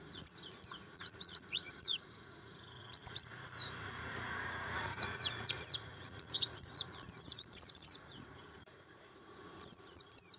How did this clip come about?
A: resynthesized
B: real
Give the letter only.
A